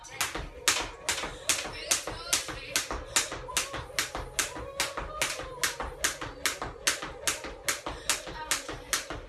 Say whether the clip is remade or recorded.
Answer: recorded